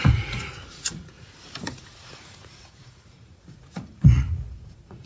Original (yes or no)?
no